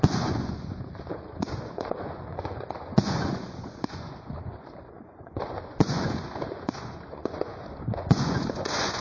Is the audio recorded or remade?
remade